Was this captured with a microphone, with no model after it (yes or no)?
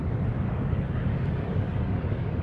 no